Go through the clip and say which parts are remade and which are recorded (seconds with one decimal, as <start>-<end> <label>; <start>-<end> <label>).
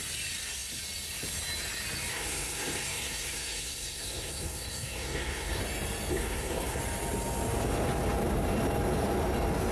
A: 0.0-2.1 recorded; 2.1-5.6 remade; 5.6-6.1 recorded; 6.1-6.8 remade; 6.8-9.7 recorded